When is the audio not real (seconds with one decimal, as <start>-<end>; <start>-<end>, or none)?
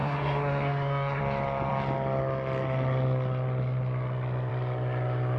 0.0-1.2